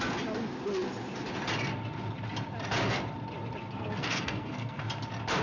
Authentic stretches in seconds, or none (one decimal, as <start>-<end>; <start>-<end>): 0.0-3.6; 4.8-5.4